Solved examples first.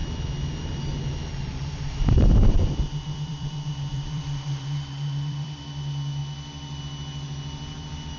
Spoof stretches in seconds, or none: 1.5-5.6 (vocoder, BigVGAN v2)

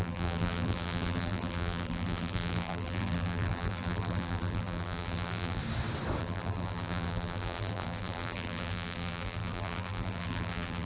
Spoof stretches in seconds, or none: 0.0-5.6 (vocoder, BigVGAN v2); 6.2-10.8

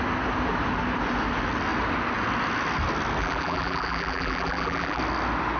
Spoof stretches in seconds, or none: 3.2-5.0 (vocoder, BigVGAN v2)